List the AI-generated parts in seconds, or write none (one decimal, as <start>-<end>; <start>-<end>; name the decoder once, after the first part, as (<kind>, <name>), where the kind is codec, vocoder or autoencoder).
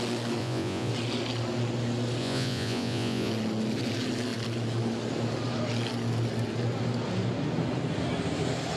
0.4-0.9 (vocoder, Vocos); 2.2-3.3